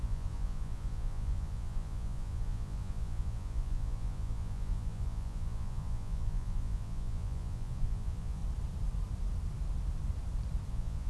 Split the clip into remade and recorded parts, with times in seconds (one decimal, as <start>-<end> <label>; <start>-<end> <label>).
0.0-8.4 remade; 8.4-10.7 recorded; 10.7-11.1 remade